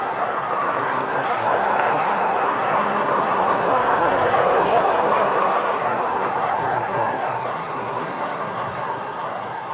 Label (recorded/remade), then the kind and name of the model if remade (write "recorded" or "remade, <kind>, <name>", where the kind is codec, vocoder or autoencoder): remade, codec, SNAC